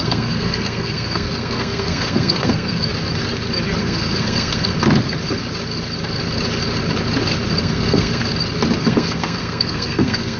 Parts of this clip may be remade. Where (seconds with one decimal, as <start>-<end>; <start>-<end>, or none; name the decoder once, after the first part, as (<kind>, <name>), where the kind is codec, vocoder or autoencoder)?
0.0-2.9 (codec, SNAC); 3.8-4.7; 7.6-8.2; 8.8-10.4